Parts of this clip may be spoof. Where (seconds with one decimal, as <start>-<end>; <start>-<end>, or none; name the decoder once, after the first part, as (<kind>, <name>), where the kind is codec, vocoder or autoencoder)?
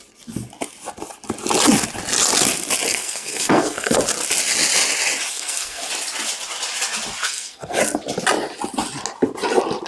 2.9-4.0 (codec, SNAC); 5.3-5.9; 7.2-7.8